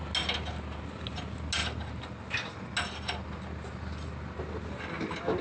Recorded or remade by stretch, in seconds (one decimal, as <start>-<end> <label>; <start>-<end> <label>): 0.0-5.4 recorded